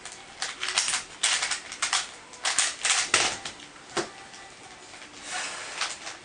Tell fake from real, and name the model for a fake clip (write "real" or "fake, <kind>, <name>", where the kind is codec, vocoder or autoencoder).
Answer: real